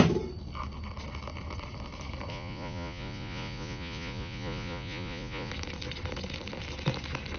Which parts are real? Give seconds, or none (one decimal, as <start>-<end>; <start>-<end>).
0.0-2.3; 5.5-7.4